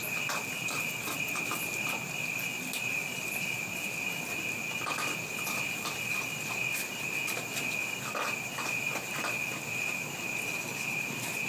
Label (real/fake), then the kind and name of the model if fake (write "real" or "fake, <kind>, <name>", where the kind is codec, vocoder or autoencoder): real